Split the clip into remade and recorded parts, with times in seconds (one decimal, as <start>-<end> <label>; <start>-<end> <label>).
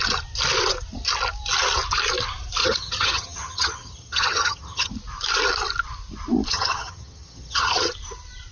0.0-2.6 recorded; 2.6-4.9 remade; 4.9-6.5 recorded; 6.5-7.9 remade; 7.9-8.5 recorded